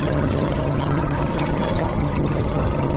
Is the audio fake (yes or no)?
yes